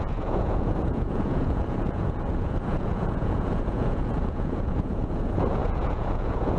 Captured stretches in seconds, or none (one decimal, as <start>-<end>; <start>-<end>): none